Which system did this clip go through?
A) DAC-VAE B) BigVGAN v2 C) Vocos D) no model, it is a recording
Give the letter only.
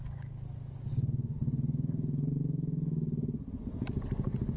D